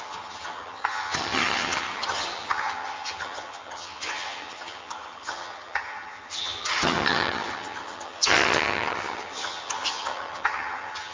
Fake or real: fake